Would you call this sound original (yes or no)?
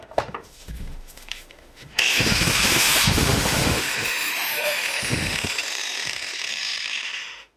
no